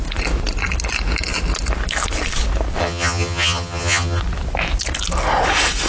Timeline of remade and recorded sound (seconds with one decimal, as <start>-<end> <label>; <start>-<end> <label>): 0.0-2.8 recorded; 2.8-4.2 remade; 4.2-5.9 recorded